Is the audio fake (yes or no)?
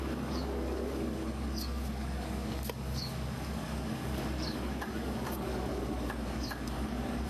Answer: yes